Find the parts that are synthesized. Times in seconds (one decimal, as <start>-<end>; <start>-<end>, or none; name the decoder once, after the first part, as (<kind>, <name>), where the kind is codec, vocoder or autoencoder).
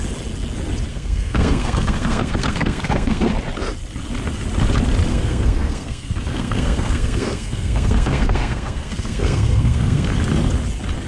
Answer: 0.9-3.3 (codec, SNAC); 5.1-10.1